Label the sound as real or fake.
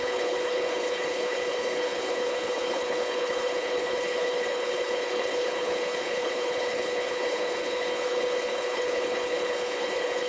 fake